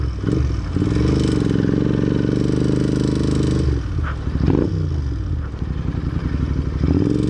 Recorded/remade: recorded